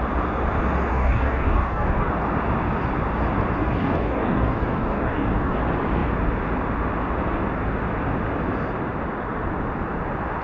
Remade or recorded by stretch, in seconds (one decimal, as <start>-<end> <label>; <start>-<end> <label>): 0.0-0.9 recorded; 0.9-2.1 remade; 2.1-3.6 recorded; 3.6-5.6 remade; 5.6-10.4 recorded